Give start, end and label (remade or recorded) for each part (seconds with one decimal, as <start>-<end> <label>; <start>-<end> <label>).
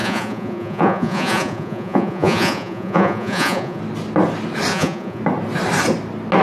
0.0-3.8 remade; 3.8-4.7 recorded; 4.7-5.2 remade; 5.2-6.4 recorded